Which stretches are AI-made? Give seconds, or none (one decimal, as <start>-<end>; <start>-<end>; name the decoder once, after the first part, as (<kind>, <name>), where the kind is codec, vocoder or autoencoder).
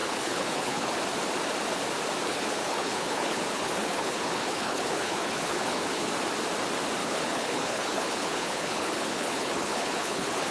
0.0-1.0 (codec, HILCodec); 2.3-6.1; 7.0-10.5